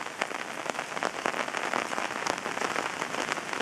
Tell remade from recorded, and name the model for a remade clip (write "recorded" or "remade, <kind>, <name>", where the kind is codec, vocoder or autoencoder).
recorded